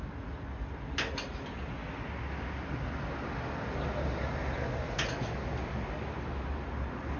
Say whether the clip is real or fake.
real